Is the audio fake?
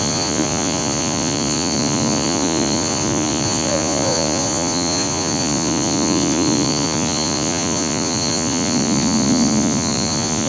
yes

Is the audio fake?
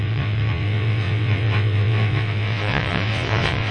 yes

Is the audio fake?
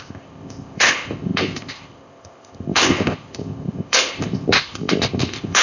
yes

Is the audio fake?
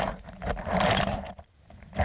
yes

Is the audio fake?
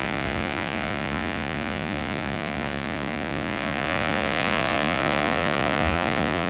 yes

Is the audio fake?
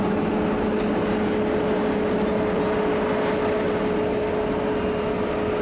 no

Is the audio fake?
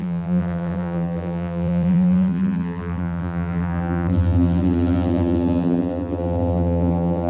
yes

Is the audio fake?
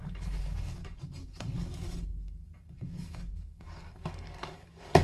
yes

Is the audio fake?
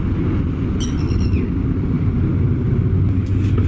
no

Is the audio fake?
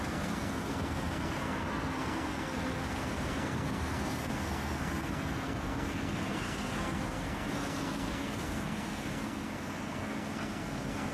yes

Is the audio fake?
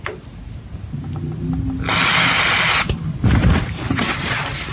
no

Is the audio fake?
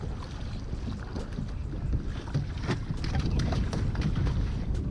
no